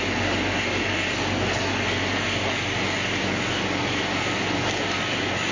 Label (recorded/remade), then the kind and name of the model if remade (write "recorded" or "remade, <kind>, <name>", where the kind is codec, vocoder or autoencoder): recorded